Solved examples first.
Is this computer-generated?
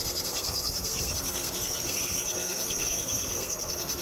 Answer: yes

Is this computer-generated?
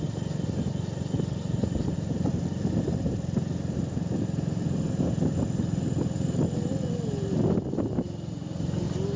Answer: no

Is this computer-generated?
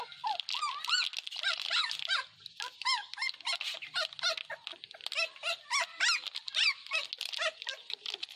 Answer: no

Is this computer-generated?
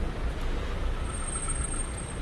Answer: no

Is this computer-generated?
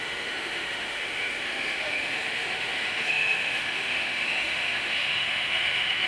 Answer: yes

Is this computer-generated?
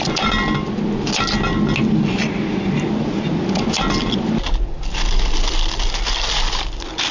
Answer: no